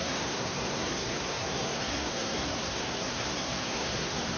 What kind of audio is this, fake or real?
fake